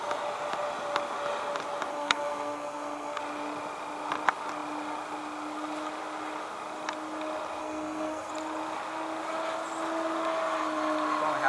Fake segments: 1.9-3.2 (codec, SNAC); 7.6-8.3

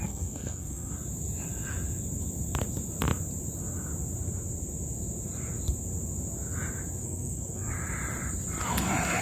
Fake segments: 0.0-0.9 (codec, SNAC); 7.0-7.7

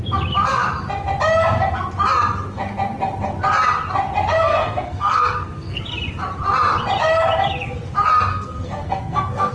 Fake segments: 4.5-5.8 (codec, SNAC); 8.3-9.5

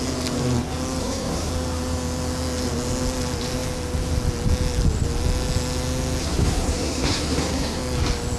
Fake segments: 1.0-1.5 (codec, SNAC); 6.2-7.8

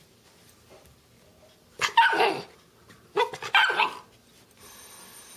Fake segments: none

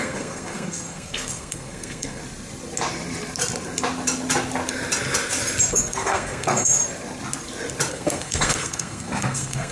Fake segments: 0.0-2.2 (codec, SNAC); 5.7-6.8; 7.9-9.7

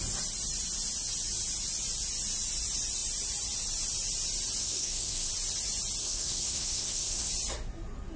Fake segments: 4.6-5.3 (codec, SNAC); 6.0-7.3

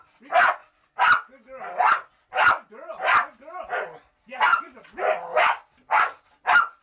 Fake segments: none